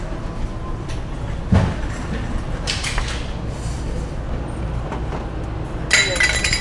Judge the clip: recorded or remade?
recorded